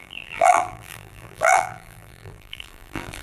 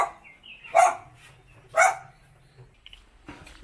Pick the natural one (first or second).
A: second